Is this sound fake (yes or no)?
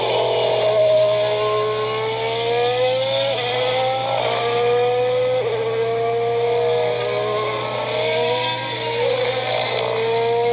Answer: no